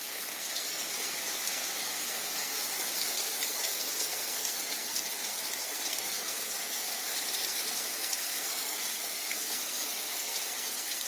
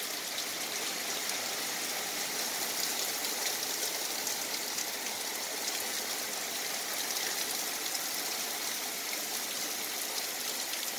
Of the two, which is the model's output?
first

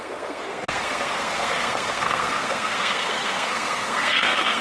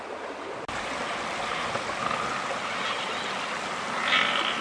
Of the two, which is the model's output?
first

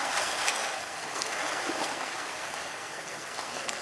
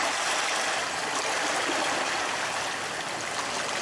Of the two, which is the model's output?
first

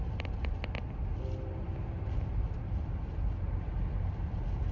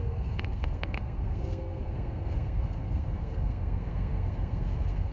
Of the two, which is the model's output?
second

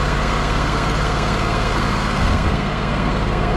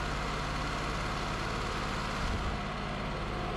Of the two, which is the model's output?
first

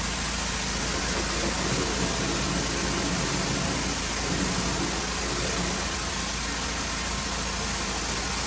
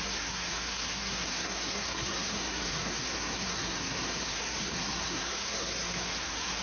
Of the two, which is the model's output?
second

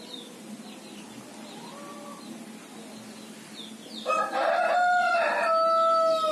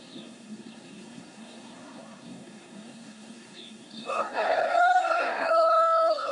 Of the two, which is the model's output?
second